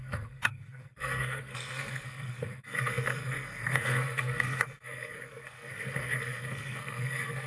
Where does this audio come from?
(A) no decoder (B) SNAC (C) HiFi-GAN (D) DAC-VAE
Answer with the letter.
B